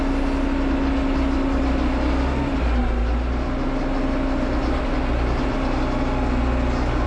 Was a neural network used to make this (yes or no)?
no